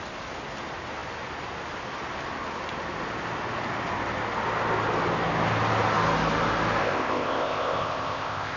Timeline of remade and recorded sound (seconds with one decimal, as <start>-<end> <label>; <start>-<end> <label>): 0.0-6.8 recorded; 6.8-8.6 remade